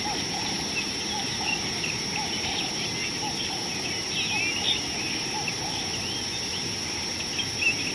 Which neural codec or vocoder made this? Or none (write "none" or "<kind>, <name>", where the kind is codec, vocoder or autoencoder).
none